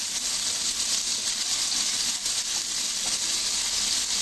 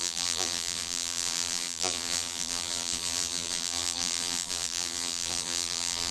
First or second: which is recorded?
first